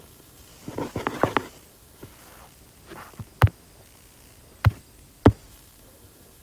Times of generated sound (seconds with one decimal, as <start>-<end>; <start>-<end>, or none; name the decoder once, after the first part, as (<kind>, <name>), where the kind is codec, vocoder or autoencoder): 0.0-0.5 (autoencoder, DAC-VAE); 1.7-2.1; 5.5-6.4